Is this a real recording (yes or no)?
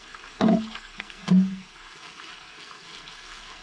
no